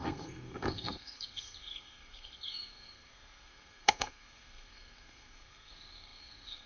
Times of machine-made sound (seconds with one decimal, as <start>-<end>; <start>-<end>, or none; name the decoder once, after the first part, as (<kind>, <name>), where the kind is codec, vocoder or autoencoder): 0.0-6.7 (codec, SNAC)